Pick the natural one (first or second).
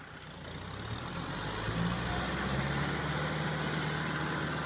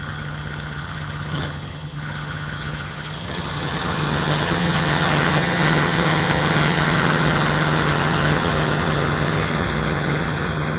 first